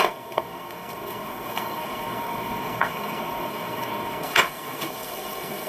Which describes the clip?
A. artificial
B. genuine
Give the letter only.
A